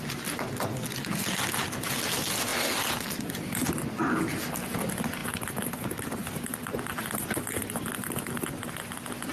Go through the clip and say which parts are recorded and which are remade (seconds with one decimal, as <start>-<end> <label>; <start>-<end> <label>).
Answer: 0.0-9.3 recorded